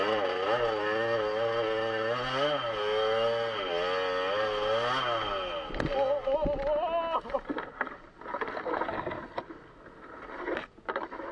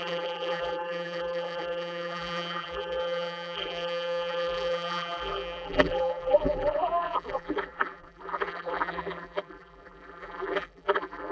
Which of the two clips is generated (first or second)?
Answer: second